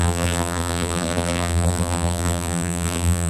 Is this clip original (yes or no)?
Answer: no